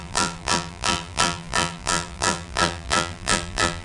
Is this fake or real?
fake